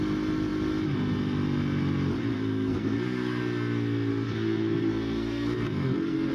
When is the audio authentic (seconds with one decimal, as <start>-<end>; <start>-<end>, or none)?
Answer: 0.0-2.3; 3.4-4.1